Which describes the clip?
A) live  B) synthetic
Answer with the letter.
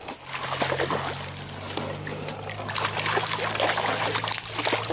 A